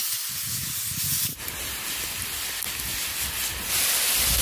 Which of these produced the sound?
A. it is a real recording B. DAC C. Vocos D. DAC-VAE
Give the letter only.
A